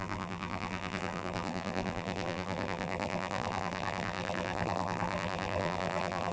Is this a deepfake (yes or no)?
yes